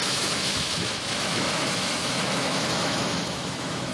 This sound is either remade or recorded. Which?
remade